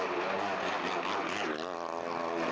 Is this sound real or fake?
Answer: real